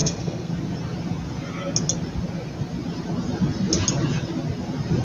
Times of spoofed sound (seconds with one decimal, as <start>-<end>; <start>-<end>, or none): 0.0-0.5